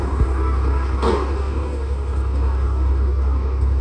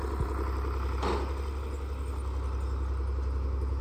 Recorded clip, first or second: second